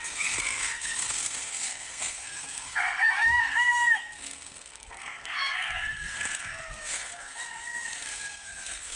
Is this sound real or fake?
fake